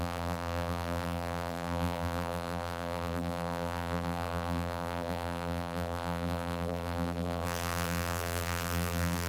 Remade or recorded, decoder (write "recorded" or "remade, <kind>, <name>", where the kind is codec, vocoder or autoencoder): remade, vocoder, BigVGAN v2